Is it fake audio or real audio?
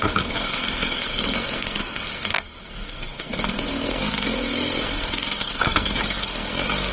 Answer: fake